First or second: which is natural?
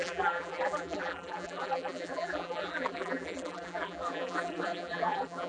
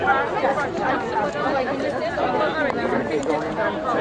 second